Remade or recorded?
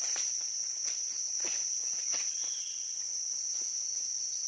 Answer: remade